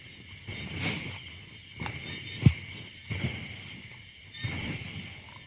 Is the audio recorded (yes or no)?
yes